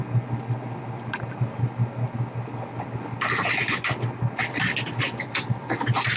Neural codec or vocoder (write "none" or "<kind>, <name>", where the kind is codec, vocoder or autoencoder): none